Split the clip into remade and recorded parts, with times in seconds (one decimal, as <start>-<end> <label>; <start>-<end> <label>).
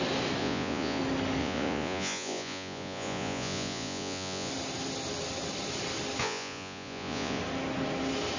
0.0-0.4 recorded; 0.4-1.0 remade; 1.0-1.4 recorded; 1.4-4.5 remade; 4.5-6.2 recorded; 6.2-7.4 remade; 7.4-8.4 recorded